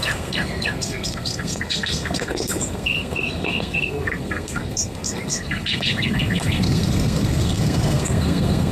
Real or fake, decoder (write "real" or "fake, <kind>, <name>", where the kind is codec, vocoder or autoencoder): fake, codec, SNAC